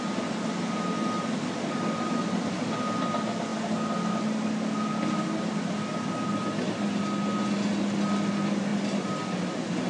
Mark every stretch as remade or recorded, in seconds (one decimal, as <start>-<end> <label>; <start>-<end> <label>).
0.0-9.9 recorded